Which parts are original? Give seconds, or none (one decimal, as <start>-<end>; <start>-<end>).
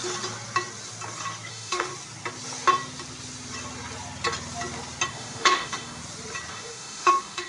0.0-1.5; 1.9-5.1; 6.0-6.5